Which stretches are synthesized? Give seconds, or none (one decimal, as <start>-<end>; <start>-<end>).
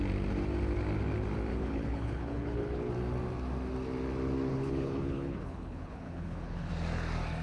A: 1.5-2.9; 4.5-6.7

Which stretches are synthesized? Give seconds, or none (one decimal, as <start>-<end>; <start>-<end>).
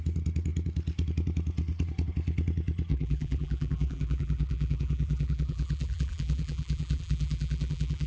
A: 2.9-8.1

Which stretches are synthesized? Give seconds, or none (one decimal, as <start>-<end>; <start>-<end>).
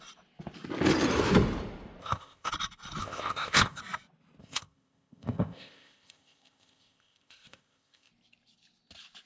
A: 2.0-2.5; 3.0-3.8; 4.4-8.1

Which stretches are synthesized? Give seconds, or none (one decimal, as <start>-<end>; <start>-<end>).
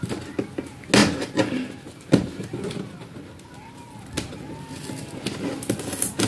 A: none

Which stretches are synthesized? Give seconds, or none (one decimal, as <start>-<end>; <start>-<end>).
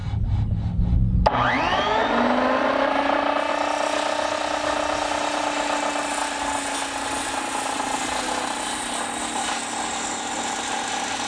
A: none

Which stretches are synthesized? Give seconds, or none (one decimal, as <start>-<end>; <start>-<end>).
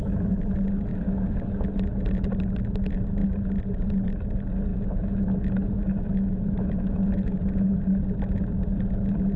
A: 0.9-1.6; 4.7-8.0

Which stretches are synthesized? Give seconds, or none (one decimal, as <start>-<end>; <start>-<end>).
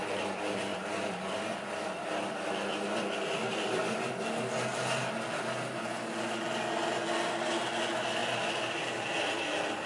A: 0.7-4.2; 8.2-9.9